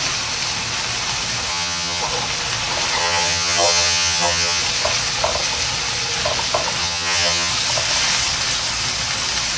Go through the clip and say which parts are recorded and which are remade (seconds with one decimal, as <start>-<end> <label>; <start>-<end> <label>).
0.0-1.5 recorded; 1.5-2.0 remade; 2.0-3.0 recorded; 3.0-4.6 remade; 4.6-6.8 recorded; 6.8-7.5 remade; 7.5-9.6 recorded